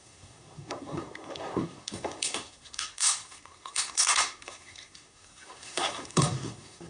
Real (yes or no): no